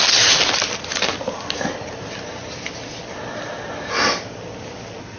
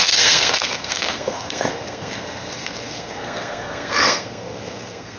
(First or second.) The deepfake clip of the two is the second